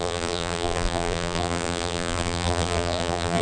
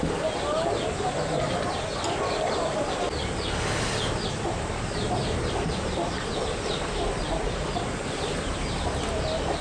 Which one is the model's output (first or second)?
first